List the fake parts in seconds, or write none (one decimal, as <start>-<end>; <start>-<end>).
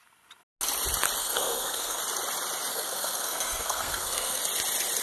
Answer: 1.2-2.0; 2.7-4.4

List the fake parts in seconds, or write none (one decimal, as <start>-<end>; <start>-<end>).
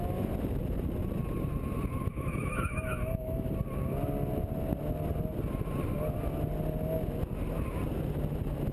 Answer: 2.1-3.5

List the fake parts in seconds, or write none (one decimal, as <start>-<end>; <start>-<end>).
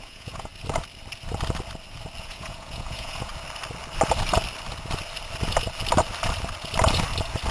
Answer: 0.0-0.5; 2.2-3.3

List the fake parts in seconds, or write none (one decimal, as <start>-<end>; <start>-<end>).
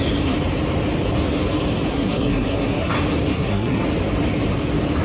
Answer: 1.9-2.9; 3.3-3.8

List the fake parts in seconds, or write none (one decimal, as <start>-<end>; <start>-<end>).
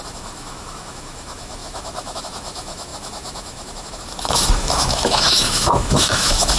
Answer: 0.0-6.6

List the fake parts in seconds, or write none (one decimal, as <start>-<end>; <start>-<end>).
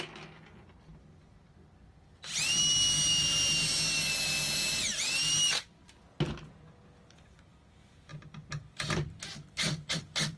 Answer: none